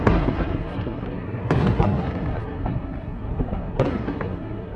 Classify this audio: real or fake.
fake